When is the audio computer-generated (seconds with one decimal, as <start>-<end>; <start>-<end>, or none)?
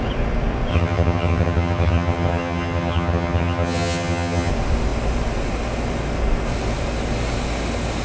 0.7-4.5